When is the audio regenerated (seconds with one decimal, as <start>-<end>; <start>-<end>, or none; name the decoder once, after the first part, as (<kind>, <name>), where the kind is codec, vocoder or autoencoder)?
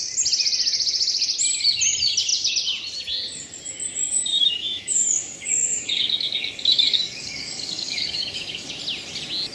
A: 4.3-8.7 (codec, DAC)